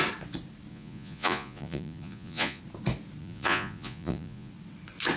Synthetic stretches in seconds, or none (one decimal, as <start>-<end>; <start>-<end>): 0.7-2.6; 3.2-4.5